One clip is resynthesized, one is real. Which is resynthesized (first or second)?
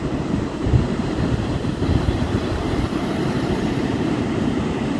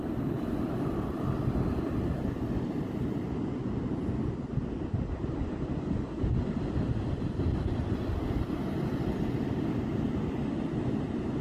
first